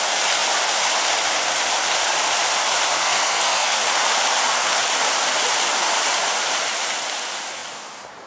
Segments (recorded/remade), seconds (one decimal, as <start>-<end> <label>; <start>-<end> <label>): 0.0-3.0 recorded; 3.0-3.8 remade; 3.8-8.3 recorded